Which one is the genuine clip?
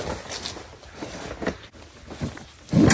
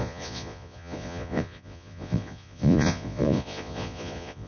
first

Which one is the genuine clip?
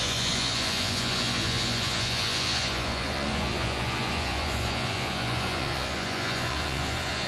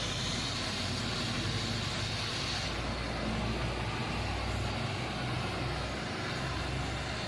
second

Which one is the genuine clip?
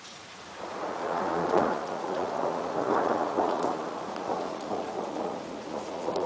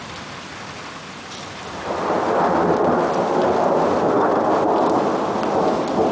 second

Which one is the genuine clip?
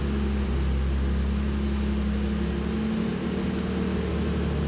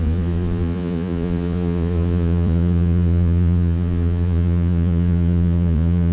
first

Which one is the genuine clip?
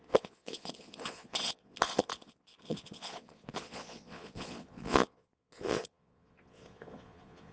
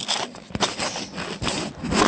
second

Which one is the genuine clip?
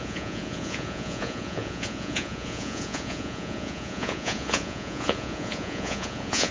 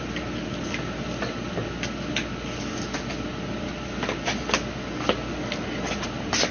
second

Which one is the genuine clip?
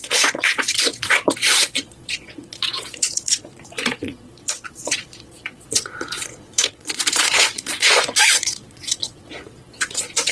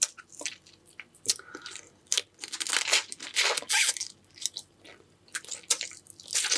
second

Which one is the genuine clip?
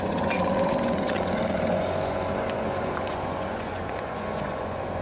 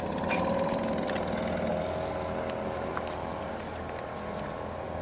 second